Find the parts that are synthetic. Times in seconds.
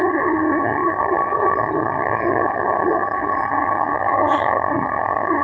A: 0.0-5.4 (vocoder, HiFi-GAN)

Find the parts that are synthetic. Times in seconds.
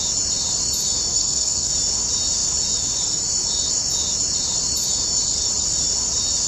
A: 1.1-1.7 (codec, SNAC)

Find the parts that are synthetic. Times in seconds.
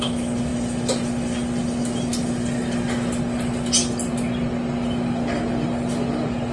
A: none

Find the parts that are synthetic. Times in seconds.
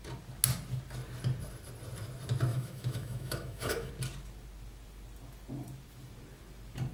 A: 2.5-3.9 (autoencoder, DAC-VAE)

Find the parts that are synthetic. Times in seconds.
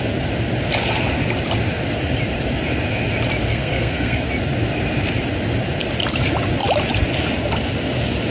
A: 3.5-4.2 (codec, SNAC)